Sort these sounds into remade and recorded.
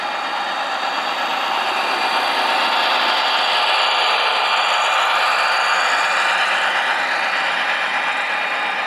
recorded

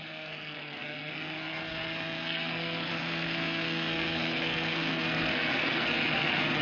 remade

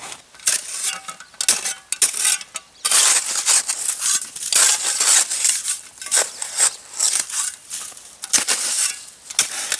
recorded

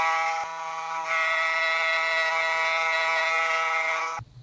recorded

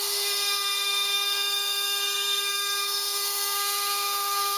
remade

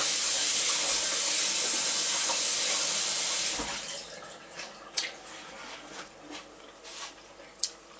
recorded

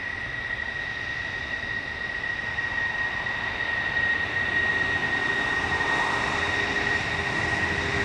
recorded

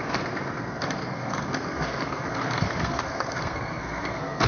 remade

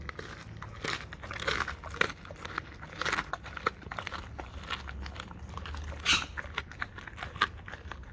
recorded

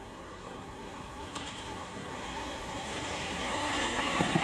remade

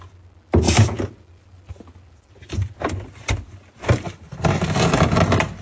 recorded